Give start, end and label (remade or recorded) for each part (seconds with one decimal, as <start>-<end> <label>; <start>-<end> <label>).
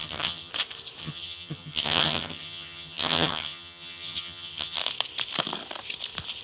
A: 0.0-0.5 remade; 0.5-1.0 recorded; 1.0-4.8 remade; 4.8-6.4 recorded